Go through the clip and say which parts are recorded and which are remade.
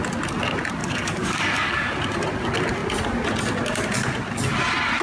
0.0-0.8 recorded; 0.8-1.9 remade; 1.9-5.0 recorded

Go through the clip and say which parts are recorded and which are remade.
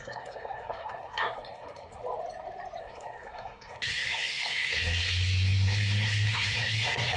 0.0-2.0 remade; 2.0-2.8 recorded; 2.8-7.2 remade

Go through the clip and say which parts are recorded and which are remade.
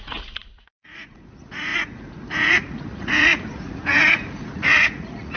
0.0-5.4 remade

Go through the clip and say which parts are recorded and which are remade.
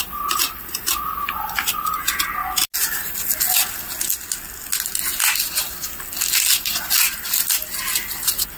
0.0-8.6 recorded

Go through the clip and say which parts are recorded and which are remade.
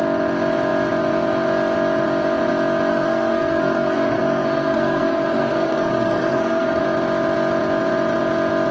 0.0-2.9 recorded; 2.9-6.8 remade; 6.8-8.7 recorded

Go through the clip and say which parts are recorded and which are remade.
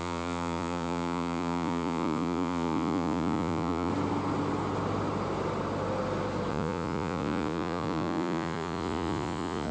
0.0-3.9 remade; 3.9-6.5 recorded; 6.5-9.7 remade